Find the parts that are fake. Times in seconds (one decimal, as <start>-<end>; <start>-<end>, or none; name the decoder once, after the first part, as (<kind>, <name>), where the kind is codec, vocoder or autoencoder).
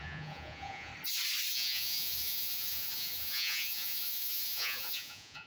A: 0.0-0.9 (vocoder, Vocos); 1.5-5.5